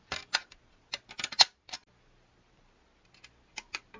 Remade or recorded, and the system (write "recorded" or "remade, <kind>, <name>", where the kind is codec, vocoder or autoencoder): recorded